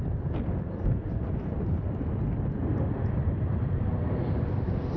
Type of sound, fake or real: real